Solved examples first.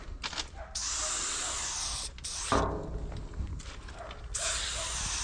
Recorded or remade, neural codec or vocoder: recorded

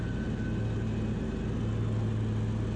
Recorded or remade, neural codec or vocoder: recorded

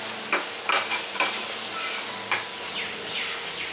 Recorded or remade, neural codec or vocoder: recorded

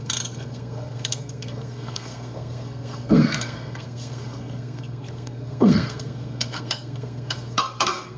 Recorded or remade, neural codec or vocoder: remade, codec, SNAC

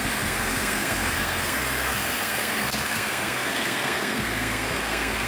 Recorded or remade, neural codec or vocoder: remade, codec, SNAC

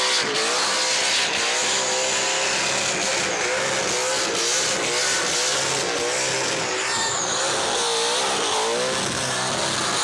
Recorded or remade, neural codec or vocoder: recorded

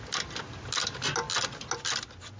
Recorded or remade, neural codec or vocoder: recorded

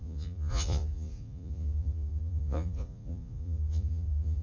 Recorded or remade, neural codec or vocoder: remade, vocoder, Vocos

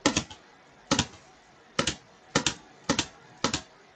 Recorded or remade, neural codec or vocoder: recorded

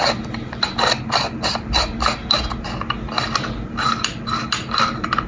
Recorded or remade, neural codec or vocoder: recorded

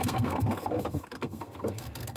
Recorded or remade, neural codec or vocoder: remade, codec, SNAC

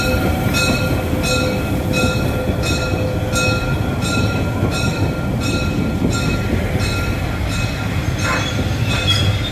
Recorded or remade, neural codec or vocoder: recorded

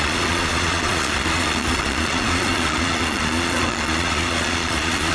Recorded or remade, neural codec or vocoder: remade, vocoder, Vocos